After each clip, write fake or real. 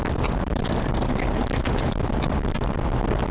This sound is fake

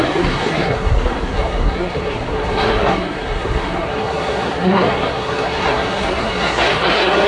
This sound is fake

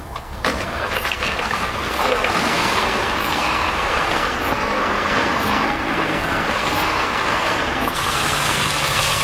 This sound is fake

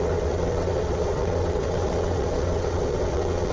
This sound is fake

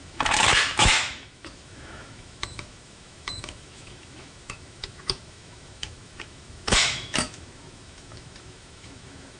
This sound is fake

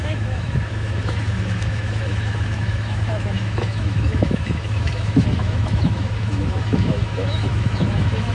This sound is fake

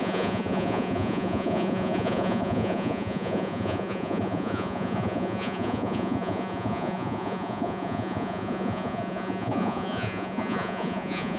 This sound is fake